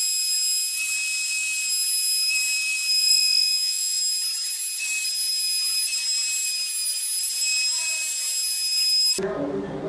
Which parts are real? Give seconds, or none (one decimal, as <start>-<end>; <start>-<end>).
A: 0.0-3.0; 4.0-9.9